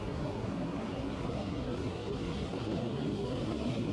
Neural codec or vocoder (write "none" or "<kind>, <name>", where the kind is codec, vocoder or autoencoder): codec, SNAC